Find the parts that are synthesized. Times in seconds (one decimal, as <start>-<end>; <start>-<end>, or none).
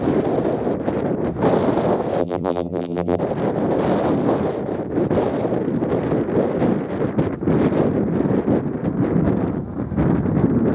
2.2-3.2